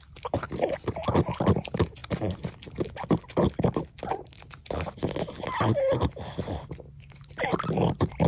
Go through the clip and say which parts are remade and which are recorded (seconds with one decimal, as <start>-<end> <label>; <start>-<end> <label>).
0.0-8.3 recorded